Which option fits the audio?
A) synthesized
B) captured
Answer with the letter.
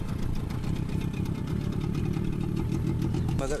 B